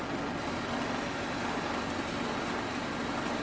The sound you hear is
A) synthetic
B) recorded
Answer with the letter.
B